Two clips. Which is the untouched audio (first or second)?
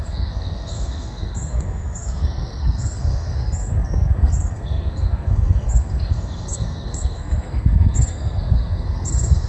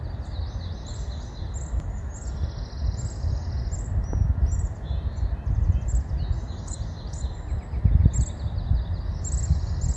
second